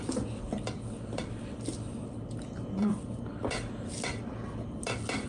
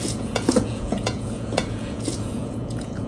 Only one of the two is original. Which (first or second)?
first